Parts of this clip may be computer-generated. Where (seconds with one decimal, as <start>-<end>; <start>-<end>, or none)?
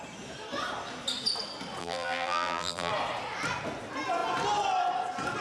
1.8-2.9